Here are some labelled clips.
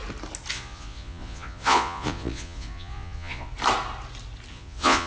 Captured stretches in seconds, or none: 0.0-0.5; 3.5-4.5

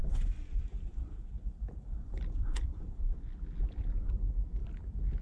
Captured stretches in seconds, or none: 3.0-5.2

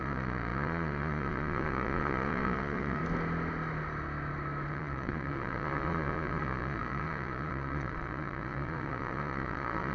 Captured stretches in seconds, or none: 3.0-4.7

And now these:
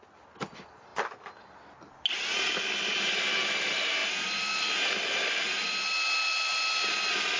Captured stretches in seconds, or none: 0.0-7.4

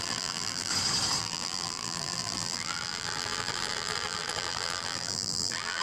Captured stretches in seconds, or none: 0.7-1.2

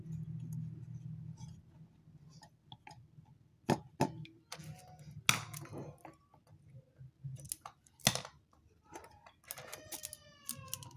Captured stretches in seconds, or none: 0.0-11.0